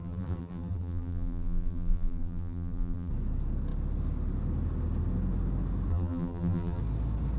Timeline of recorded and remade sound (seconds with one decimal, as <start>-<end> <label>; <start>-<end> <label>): 0.0-3.1 remade; 3.1-5.9 recorded; 5.9-6.8 remade; 6.8-7.4 recorded